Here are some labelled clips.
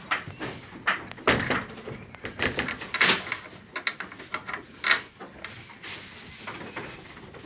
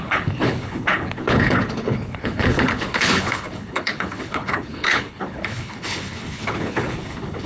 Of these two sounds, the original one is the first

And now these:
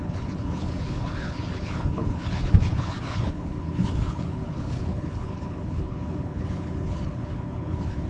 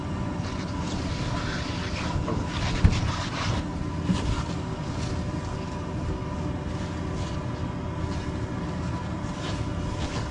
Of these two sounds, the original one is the second